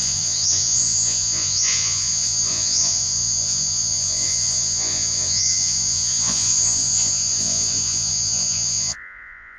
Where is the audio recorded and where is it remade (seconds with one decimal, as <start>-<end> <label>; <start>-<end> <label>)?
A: 0.0-9.6 remade

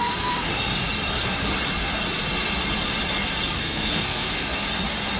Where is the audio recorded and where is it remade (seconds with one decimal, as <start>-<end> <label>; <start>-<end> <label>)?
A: 0.0-0.5 remade; 0.5-3.6 recorded; 3.6-4.6 remade; 4.6-5.2 recorded

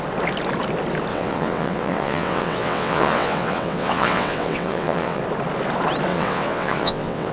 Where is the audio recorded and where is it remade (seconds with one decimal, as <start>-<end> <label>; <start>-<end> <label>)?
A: 0.0-1.1 recorded; 1.1-5.2 remade; 5.2-6.1 recorded; 6.1-7.3 remade